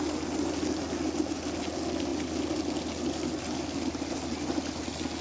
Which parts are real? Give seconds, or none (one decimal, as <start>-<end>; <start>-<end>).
0.0-5.2